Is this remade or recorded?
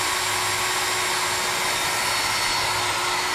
recorded